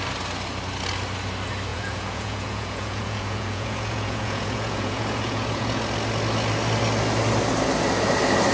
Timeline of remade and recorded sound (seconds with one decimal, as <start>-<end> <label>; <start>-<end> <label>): 0.0-1.7 recorded; 1.7-5.8 remade; 5.8-8.5 recorded